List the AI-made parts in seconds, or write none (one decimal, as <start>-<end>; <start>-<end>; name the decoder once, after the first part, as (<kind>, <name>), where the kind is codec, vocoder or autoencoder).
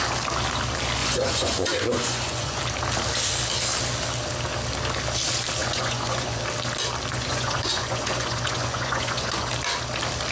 1.0-2.6 (vocoder, Vocos); 5.6-6.4; 7.1-9.5